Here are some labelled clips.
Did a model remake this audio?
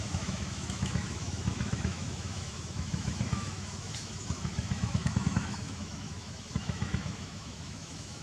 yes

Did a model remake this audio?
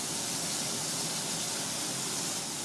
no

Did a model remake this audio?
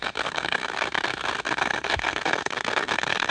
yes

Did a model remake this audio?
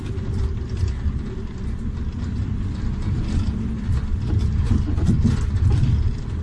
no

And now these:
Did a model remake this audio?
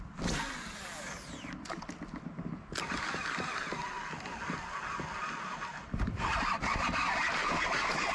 no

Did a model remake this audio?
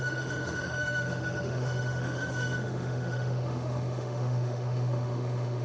yes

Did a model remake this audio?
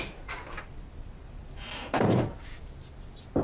no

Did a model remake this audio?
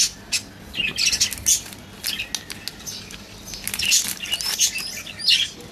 no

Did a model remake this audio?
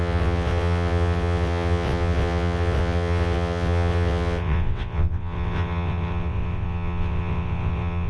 yes